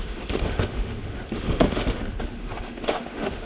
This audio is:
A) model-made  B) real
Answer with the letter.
A